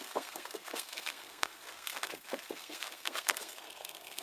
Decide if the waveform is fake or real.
fake